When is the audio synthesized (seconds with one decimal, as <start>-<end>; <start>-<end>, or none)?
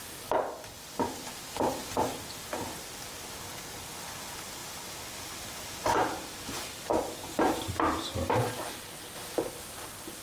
none